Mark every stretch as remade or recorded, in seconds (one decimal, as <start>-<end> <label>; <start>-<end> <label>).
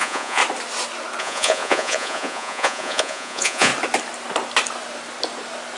0.0-0.4 remade; 0.4-1.2 recorded; 1.2-3.7 remade; 3.7-5.8 recorded